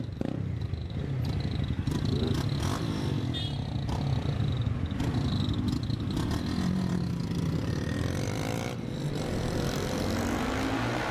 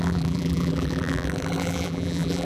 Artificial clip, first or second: second